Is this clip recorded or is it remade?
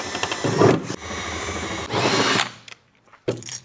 remade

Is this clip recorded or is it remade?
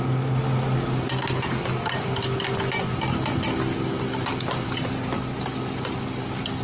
recorded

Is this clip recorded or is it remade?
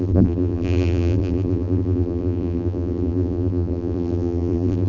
remade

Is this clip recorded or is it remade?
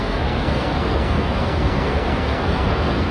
remade